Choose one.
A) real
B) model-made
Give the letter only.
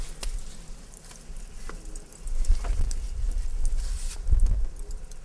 A